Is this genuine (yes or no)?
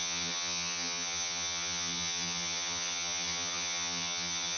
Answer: no